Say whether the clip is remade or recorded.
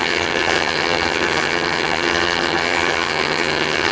remade